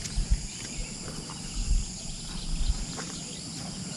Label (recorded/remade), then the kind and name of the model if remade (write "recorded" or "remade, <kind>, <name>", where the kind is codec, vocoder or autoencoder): recorded